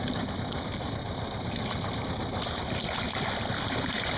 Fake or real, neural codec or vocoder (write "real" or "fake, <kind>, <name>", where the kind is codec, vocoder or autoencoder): real